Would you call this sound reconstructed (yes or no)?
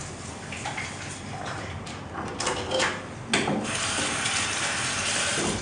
no